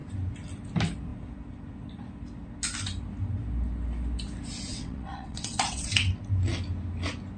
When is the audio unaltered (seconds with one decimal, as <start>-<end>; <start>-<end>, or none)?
0.0-4.7; 6.1-7.4